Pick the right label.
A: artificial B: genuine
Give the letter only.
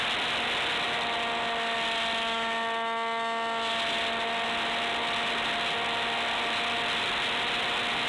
B